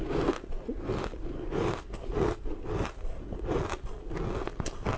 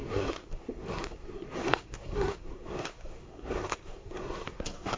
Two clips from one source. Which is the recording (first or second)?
first